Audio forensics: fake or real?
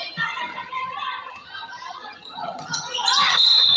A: fake